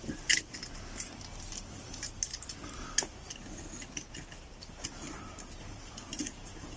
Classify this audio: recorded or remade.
recorded